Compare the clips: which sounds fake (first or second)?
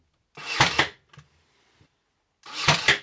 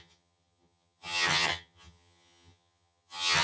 second